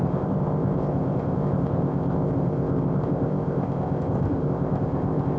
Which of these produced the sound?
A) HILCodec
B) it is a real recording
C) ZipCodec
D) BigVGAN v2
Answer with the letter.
C